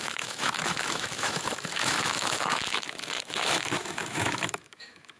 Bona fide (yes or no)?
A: no